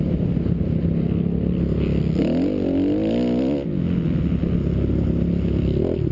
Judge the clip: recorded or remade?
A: recorded